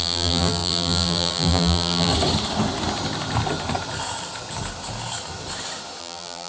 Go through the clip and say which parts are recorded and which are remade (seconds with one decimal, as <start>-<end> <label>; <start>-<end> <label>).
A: 0.0-2.1 remade; 2.1-6.0 recorded; 6.0-6.5 remade